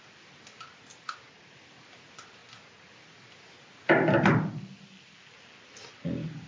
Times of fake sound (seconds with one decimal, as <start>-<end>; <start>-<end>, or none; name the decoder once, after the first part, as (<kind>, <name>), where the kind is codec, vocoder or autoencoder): none